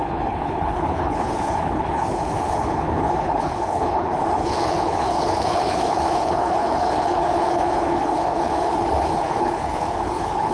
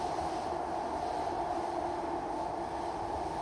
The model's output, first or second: first